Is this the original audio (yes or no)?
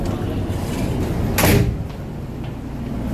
yes